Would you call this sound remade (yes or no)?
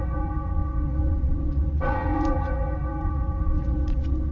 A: yes